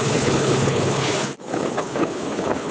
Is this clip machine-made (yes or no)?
yes